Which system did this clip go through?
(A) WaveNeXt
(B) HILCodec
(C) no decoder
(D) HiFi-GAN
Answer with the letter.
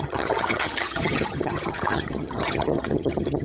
D